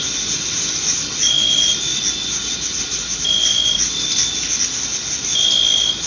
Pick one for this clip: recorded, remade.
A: recorded